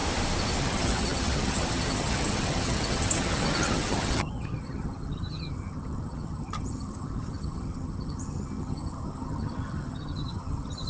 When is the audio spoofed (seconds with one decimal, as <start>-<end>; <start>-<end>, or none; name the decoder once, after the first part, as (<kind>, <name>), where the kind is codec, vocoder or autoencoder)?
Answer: 0.6-10.9 (vocoder, HiFi-GAN)